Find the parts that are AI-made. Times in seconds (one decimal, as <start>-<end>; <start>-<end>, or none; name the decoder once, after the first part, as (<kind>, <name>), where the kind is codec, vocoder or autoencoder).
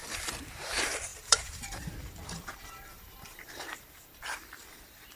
0.5-5.2 (vocoder, BigVGAN v2)